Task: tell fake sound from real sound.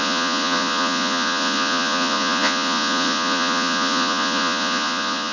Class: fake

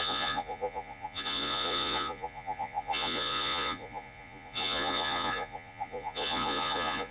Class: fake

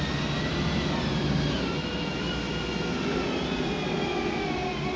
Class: real